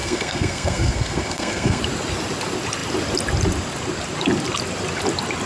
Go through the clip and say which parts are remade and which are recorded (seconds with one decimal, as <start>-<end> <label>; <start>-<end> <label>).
0.0-1.8 remade; 1.8-5.5 recorded